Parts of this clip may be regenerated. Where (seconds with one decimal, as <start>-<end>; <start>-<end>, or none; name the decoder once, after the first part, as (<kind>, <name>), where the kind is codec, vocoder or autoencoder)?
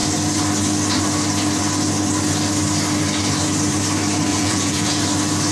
4.3-5.0 (vocoder, Vocos)